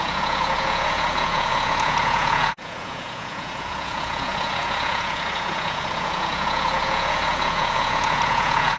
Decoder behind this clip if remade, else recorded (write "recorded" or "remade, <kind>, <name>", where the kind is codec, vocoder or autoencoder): remade, vocoder, Vocos